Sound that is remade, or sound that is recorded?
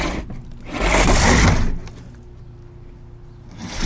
recorded